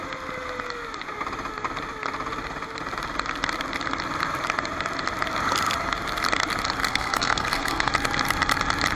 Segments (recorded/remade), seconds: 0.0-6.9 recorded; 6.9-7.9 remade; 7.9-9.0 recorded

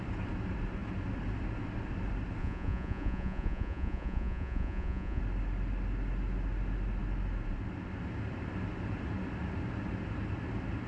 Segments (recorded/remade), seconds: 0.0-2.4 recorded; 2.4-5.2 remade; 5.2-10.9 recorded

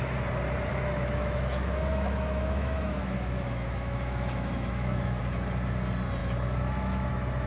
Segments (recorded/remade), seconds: 0.0-0.7 recorded; 0.7-5.2 remade; 5.2-6.2 recorded; 6.2-7.1 remade; 7.1-7.5 recorded